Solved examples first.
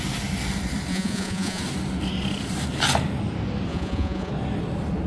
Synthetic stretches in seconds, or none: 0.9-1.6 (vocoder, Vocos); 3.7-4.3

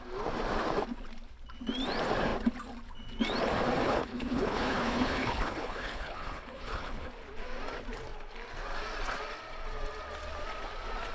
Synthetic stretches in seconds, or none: 3.8-7.1 (codec, HILCodec)